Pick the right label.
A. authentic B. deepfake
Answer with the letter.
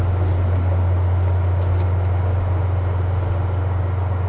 A